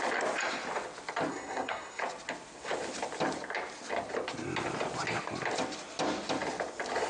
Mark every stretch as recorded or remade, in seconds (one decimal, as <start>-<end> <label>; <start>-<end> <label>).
0.0-1.3 recorded; 1.3-2.0 remade; 2.0-7.1 recorded